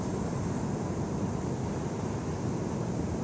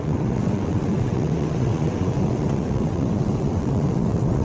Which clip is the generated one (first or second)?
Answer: second